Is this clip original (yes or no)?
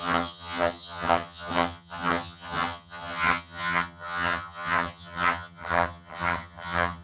no